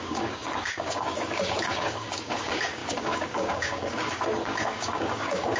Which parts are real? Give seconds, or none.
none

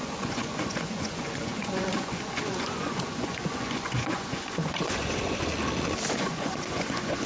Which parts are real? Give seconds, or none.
5.5-6.1

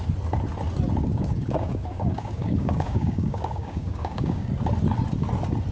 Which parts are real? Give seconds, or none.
0.0-1.1; 4.5-5.7

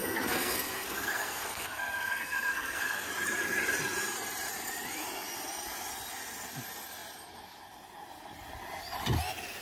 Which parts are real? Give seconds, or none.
3.1-9.6

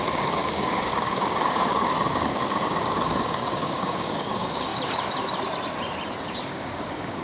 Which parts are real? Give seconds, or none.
4.7-6.5

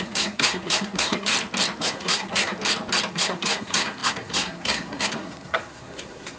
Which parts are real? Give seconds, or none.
1.3-1.8; 2.5-3.1